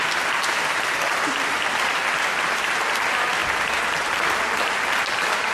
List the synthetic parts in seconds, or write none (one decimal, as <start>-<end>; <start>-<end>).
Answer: 0.0-5.5